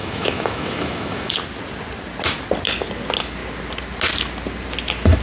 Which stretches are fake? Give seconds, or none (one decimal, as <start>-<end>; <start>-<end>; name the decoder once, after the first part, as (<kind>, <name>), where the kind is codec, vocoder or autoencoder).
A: 0.0-1.3 (autoencoder, DAC-VAE)